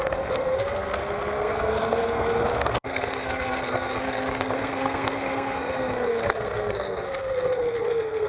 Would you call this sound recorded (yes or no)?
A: no